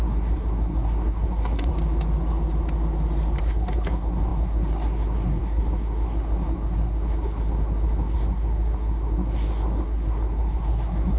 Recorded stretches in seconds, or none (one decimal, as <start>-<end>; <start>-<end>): 1.7-3.4